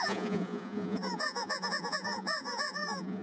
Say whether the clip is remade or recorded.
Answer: remade